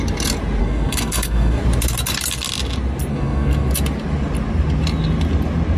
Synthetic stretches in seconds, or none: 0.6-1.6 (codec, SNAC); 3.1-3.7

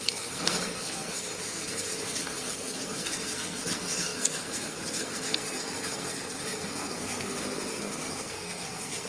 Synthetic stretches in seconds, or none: 0.0-9.1 (codec, SNAC)

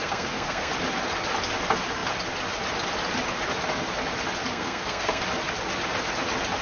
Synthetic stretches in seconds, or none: 0.0-0.7 (codec, SNAC); 4.5-5.2

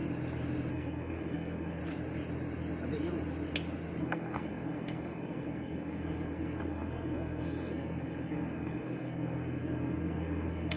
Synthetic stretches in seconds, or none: 0.7-1.8 (codec, SNAC); 4.0-10.8

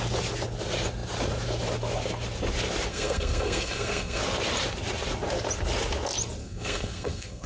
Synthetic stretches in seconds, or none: 2.9-4.2 (codec, SNAC); 6.4-7.5